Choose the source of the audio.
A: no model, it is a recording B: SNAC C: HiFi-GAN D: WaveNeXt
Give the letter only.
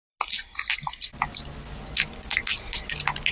A